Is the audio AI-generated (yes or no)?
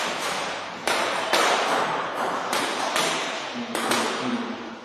yes